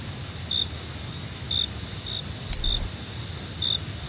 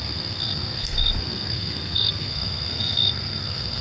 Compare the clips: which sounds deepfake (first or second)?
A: second